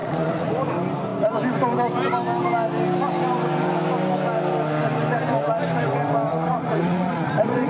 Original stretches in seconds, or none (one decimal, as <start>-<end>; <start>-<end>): 0.5-6.3